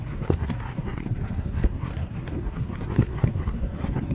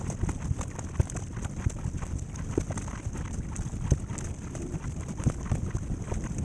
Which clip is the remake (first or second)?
first